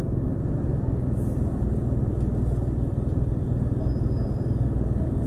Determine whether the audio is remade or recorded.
recorded